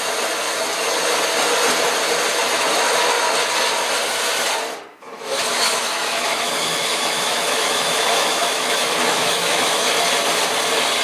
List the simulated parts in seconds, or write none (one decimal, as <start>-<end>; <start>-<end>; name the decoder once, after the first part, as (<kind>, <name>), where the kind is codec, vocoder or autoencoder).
4.9-9.9 (autoencoder, DAC-VAE)